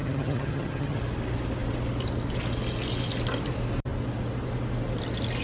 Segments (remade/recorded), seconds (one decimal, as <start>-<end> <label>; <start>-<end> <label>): 0.0-1.0 remade; 1.0-5.4 recorded